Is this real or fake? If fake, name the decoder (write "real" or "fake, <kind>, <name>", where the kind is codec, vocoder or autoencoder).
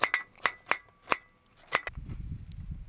real